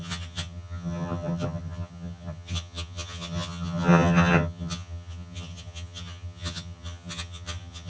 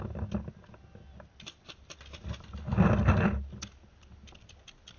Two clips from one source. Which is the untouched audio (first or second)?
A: second